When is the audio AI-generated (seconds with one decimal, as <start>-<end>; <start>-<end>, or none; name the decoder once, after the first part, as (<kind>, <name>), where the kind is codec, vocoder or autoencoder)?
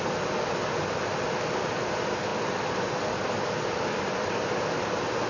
none